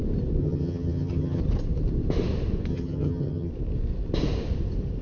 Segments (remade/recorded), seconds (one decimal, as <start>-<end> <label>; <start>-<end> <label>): 0.0-0.4 recorded; 0.4-1.4 remade; 1.4-2.7 recorded; 2.7-3.5 remade; 3.5-5.0 recorded